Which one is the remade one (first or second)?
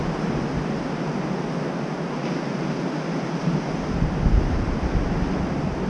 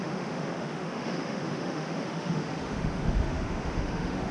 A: second